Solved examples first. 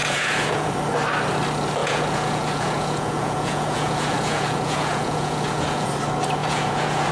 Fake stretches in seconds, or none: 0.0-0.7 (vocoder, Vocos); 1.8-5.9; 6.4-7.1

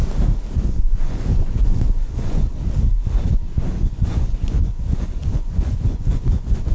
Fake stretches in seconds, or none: 0.8-2.5 (vocoder, Vocos); 3.8-6.7

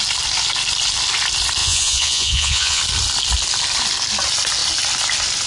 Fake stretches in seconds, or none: 1.6-2.8 (vocoder, Vocos)

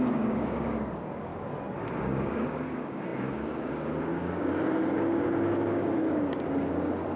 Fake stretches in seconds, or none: 0.0-1.3 (codec, DAC); 2.0-7.2